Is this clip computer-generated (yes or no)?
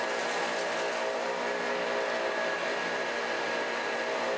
no